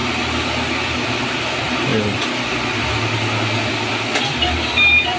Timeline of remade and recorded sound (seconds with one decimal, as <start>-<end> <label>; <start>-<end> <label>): 0.0-1.2 recorded; 1.2-1.9 remade; 1.9-4.1 recorded; 4.1-5.2 remade